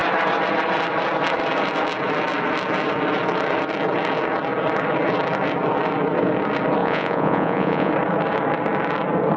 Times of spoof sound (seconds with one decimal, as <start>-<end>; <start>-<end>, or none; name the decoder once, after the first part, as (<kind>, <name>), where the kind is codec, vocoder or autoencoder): 6.8-7.9 (vocoder, Vocos)